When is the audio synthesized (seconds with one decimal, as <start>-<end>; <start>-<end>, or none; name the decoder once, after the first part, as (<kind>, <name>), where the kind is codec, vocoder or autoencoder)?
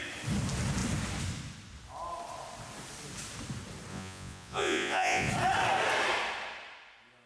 3.9-5.3 (vocoder, Vocos)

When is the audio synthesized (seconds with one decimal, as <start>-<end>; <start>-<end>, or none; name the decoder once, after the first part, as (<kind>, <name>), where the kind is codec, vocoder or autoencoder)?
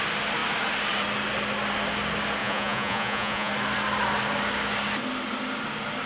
2.4-3.5 (vocoder, Vocos)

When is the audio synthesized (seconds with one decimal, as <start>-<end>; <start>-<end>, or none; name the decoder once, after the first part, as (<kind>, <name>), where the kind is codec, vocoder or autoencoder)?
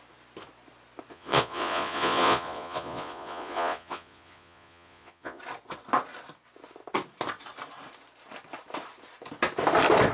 1.1-5.4 (vocoder, Vocos)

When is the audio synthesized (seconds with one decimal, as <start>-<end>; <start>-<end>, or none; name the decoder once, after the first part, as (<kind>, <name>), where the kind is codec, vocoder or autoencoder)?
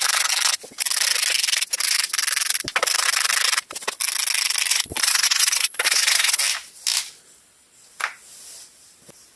4.7-6.4 (vocoder, Vocos)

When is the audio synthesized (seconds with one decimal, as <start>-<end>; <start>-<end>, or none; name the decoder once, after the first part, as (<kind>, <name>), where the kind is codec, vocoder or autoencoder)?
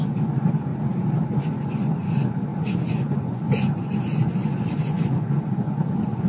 0.0-0.7 (vocoder, Vocos); 1.4-6.3